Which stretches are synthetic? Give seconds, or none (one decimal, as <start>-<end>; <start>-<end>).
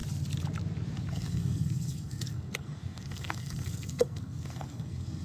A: 1.1-5.2